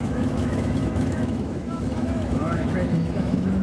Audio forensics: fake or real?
fake